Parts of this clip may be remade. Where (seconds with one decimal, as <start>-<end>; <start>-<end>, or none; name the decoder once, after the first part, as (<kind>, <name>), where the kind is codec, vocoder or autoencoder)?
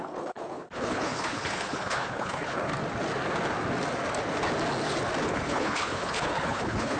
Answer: 0.0-2.7 (codec, HILCodec); 5.3-7.0